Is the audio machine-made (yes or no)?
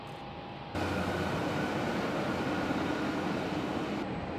no